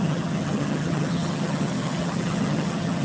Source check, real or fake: fake